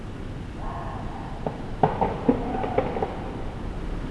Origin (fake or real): real